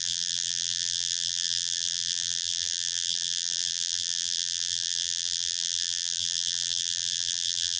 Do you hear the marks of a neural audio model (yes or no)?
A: yes